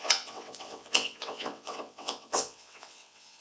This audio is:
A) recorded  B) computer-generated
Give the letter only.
B